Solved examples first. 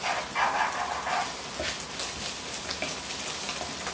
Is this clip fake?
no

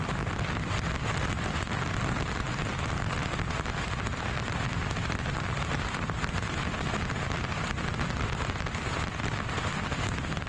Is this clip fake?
no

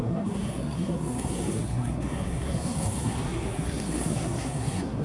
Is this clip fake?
yes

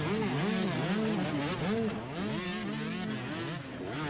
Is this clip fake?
no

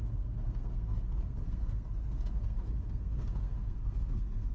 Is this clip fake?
yes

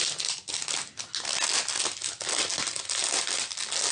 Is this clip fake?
no